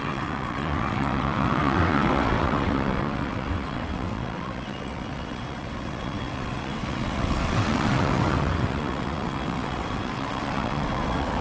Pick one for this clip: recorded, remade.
remade